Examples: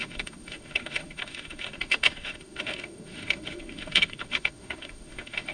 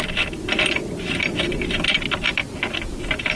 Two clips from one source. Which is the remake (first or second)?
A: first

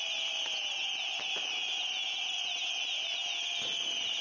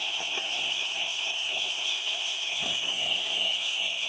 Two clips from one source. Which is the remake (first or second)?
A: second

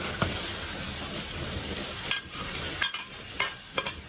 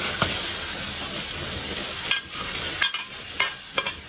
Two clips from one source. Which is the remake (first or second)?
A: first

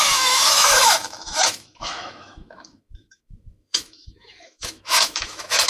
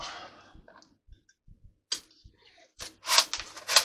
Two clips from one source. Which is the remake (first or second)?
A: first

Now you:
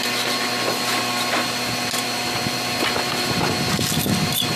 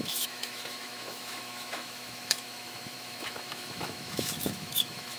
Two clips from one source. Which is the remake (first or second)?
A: second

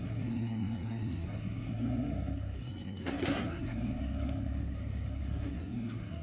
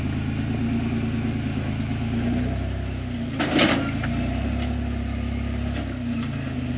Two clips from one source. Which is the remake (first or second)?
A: first